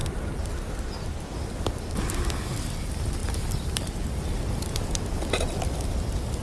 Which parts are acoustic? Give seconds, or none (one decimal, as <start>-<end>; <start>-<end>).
0.7-6.4